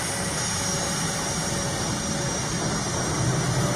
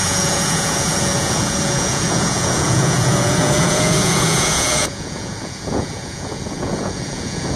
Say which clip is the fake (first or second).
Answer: second